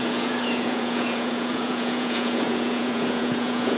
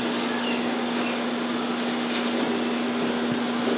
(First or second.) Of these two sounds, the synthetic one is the first